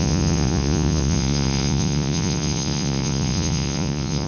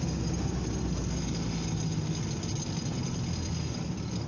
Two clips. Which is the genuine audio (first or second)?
second